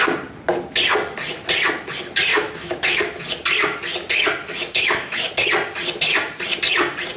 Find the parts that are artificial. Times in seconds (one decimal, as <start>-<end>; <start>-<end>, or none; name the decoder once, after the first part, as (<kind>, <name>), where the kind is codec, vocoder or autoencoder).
2.3-3.2 (autoencoder, DAC-VAE); 4.6-5.3